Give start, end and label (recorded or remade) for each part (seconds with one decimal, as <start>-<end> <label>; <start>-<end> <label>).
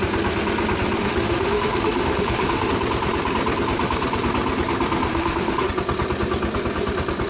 0.0-1.0 recorded; 1.0-2.7 remade; 2.7-5.1 recorded; 5.1-5.7 remade; 5.7-7.3 recorded